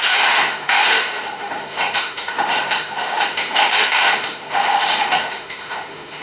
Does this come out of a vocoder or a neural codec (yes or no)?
yes